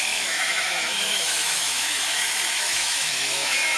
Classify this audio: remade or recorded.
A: remade